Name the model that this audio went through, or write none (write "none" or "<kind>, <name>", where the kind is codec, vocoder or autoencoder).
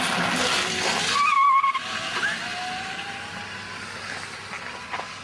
none